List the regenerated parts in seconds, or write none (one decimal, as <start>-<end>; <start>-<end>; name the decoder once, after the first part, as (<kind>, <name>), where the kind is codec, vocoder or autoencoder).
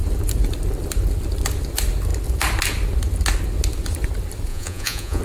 4.5-5.2 (vocoder, Vocos)